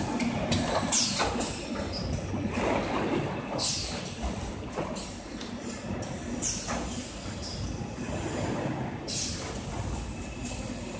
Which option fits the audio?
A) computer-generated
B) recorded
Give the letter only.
B